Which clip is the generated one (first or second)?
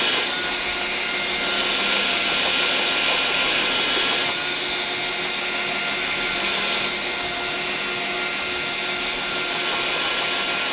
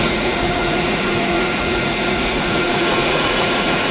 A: second